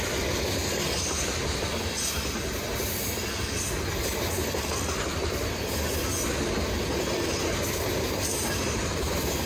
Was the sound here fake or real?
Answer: real